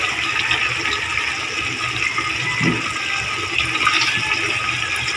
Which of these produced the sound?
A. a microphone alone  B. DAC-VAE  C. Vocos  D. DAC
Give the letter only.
A